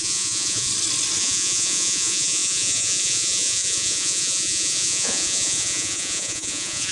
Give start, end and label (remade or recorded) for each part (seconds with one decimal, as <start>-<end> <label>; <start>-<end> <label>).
0.0-0.7 remade; 0.7-1.2 recorded; 1.2-6.9 remade